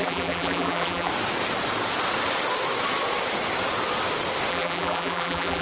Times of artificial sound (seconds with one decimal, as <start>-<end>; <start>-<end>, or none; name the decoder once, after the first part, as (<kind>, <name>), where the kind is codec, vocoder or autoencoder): 0.0-1.1 (vocoder, BigVGAN v2); 4.5-5.6